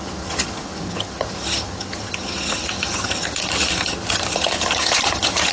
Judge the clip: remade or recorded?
remade